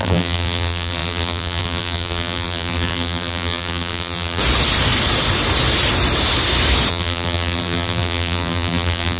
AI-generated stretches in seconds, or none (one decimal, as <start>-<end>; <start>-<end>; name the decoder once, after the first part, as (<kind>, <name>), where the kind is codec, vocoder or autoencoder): 0.0-4.4 (vocoder, BigVGAN v2); 6.9-9.2